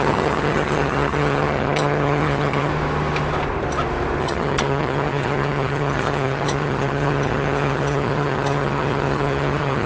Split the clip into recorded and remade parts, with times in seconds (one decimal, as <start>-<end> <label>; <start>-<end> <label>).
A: 0.0-2.7 remade; 2.7-4.2 recorded; 4.2-9.9 remade